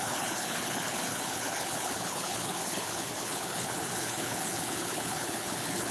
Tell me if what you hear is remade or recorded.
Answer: remade